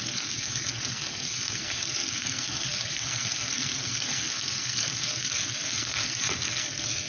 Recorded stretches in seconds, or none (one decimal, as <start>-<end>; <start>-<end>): none